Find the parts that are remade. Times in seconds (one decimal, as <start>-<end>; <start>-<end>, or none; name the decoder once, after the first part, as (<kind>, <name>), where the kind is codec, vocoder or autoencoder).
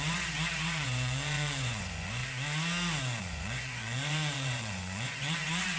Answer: 0.0-2.2 (vocoder, Vocos); 3.2-5.8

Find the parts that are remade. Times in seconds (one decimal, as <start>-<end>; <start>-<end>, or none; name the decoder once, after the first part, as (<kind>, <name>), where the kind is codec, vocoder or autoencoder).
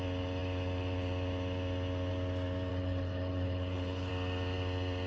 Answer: 2.7-4.1 (codec, HILCodec)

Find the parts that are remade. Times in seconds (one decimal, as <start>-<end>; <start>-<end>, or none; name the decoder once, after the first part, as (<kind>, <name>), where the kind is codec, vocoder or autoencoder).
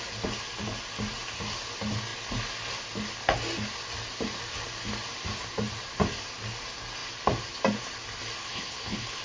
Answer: 8.4-9.2 (codec, HILCodec)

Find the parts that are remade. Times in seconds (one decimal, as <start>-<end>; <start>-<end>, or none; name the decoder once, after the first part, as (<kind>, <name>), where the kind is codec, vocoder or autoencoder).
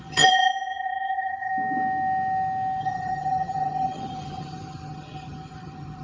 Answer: 0.0-1.5 (vocoder, HiFi-GAN); 2.8-6.0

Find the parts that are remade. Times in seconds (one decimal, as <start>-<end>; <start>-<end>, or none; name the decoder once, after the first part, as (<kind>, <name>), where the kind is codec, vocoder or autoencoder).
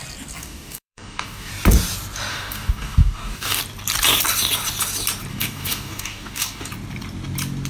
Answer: 0.4-1.5 (codec, DAC); 2.3-3.6; 5.3-6.7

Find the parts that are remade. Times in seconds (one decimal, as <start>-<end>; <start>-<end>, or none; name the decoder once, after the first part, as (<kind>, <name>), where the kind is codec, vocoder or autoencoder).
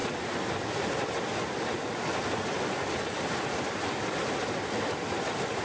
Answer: none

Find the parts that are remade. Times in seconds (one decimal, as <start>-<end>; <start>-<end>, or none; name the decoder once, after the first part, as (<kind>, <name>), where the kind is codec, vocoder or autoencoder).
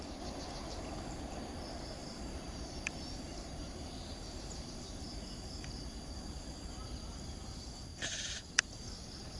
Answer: 2.0-7.3 (vocoder, BigVGAN v2); 7.9-8.6